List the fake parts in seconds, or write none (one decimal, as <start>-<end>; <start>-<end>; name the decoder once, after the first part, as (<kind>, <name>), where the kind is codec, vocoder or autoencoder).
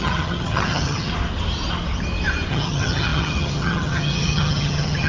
0.0-1.1 (vocoder, HiFi-GAN); 2.5-5.1